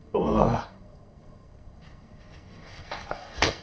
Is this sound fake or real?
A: fake